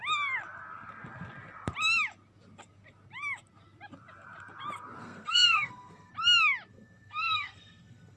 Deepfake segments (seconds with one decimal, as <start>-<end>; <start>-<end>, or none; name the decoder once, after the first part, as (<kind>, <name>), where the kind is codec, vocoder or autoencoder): 5.0-6.1 (codec, SNAC); 6.7-8.2